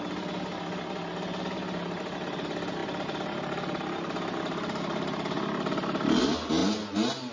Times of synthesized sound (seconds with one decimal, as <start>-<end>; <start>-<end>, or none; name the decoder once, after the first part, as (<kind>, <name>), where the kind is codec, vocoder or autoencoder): none